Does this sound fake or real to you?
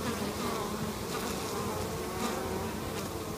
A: real